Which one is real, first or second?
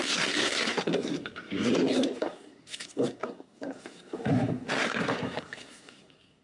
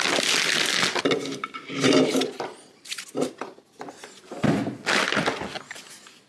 second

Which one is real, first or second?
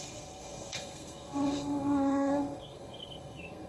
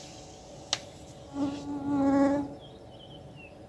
second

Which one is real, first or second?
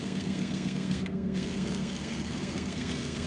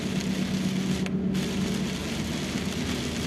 second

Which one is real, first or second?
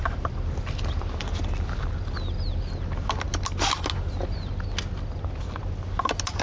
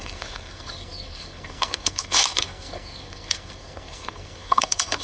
first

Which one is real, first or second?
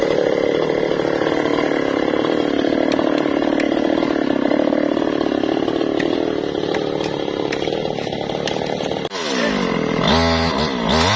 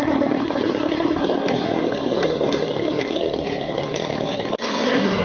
first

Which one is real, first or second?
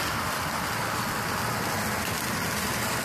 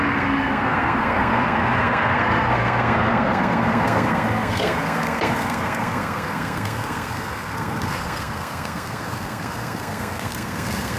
first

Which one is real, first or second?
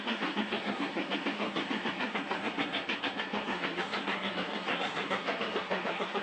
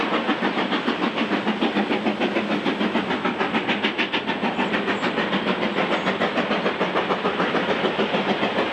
second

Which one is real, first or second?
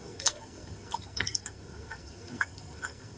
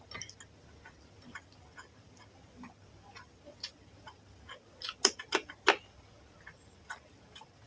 second